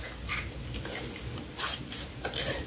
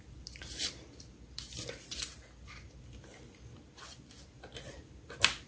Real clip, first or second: first